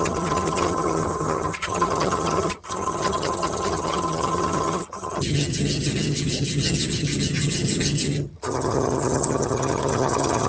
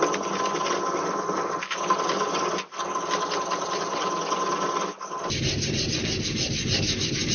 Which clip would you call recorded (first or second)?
second